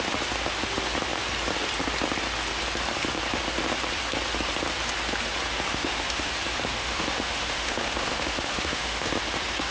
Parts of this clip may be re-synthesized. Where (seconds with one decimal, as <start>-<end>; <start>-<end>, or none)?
5.7-6.3; 6.8-9.1